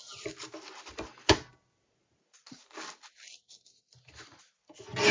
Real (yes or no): yes